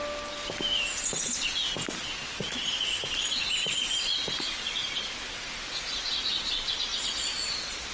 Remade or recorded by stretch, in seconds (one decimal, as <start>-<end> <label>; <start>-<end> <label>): 0.0-7.9 recorded